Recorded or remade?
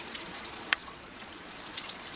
remade